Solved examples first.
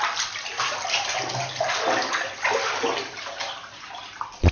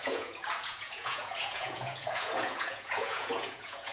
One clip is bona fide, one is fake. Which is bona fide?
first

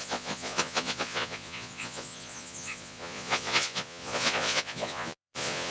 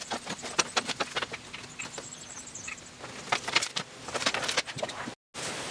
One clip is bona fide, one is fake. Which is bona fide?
second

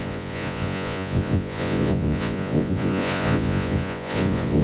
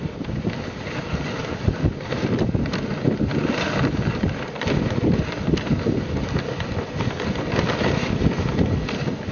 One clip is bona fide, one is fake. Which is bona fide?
second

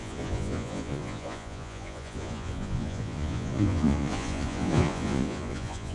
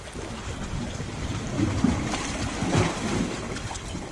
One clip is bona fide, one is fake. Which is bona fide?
second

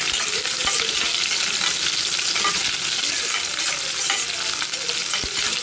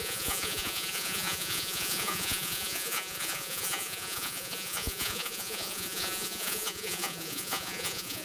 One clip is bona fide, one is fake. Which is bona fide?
first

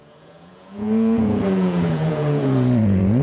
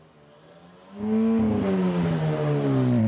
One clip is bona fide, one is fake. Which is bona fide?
second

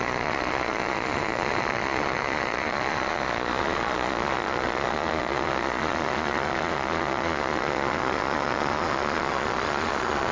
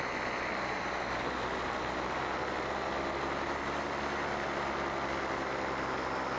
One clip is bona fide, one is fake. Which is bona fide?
second